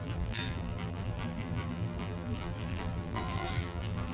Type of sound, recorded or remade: remade